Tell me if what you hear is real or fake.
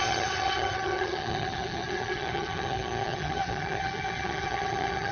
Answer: fake